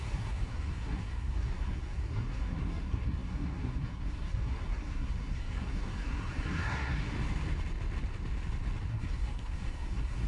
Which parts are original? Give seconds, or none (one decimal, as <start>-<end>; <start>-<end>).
7.1-8.9